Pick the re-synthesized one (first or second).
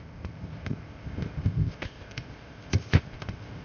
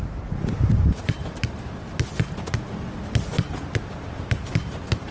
first